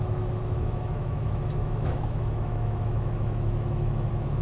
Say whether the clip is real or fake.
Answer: fake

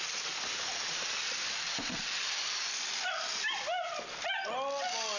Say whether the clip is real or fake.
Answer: real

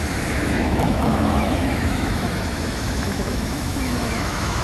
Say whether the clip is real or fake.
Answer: fake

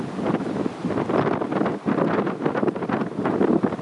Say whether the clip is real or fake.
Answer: real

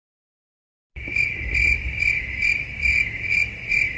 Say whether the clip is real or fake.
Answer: real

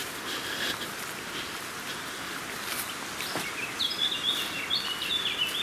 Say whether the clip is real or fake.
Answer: real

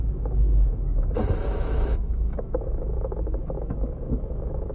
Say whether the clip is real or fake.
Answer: fake